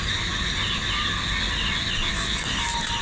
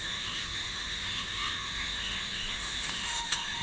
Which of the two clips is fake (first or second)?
second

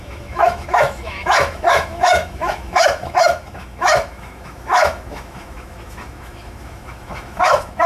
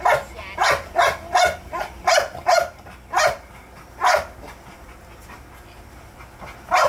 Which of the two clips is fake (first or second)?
first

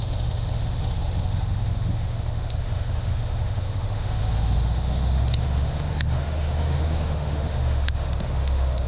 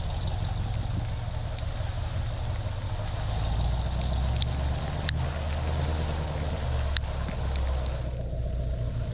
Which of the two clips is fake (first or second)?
first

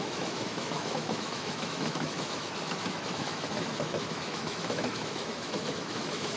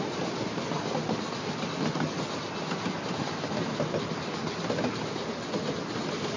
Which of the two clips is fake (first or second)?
first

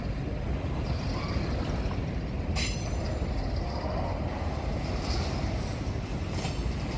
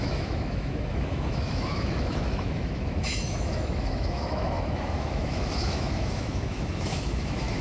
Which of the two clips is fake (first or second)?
second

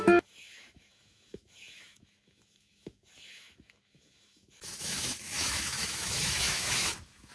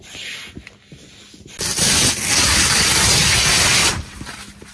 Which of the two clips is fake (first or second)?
first